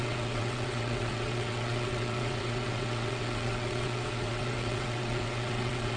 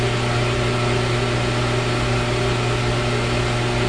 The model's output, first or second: first